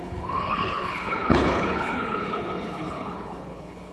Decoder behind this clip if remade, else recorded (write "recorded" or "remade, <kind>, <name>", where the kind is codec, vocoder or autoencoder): remade, codec, HILCodec